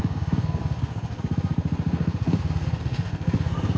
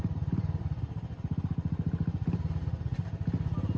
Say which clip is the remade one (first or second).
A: first